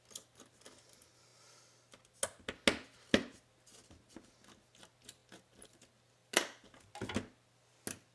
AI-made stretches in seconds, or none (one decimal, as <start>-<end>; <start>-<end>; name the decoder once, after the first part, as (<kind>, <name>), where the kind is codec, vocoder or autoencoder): none